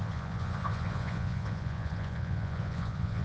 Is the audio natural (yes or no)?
no